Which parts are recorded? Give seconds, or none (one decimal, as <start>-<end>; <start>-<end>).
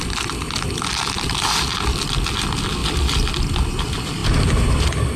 0.0-2.8; 3.4-4.2; 4.7-5.2